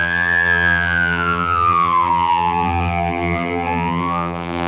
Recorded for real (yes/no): no